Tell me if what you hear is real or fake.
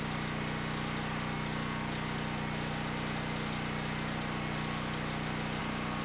real